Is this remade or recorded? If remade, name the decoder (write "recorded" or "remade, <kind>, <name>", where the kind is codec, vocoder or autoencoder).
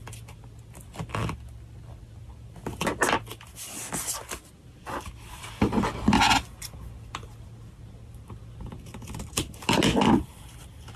recorded